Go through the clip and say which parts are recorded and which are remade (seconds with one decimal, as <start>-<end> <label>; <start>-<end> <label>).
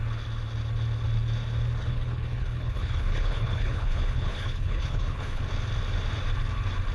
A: 0.0-1.8 recorded; 1.8-5.4 remade; 5.4-6.9 recorded